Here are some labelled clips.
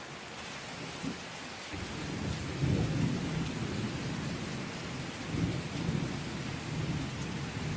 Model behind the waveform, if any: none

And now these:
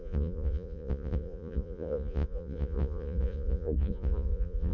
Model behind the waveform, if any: vocoder, Vocos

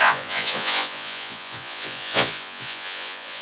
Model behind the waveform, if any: vocoder, Vocos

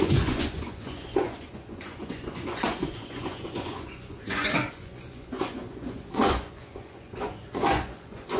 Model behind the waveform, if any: vocoder, Vocos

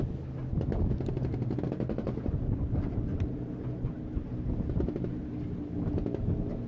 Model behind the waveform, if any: none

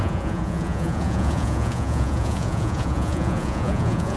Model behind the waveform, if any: vocoder, Vocos